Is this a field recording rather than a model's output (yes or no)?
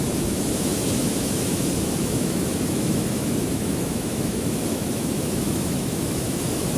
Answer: no